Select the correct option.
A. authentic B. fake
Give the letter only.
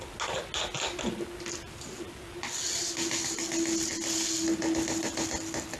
A